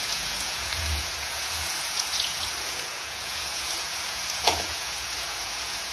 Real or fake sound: fake